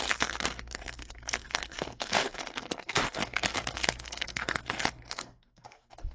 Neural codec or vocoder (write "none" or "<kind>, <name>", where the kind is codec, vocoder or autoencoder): codec, SNAC